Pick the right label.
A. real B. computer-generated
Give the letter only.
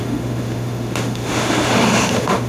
B